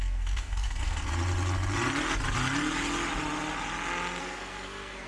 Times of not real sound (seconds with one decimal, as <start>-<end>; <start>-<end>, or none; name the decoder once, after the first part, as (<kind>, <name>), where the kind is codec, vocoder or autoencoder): 0.0-1.1 (codec, SNAC); 4.2-5.1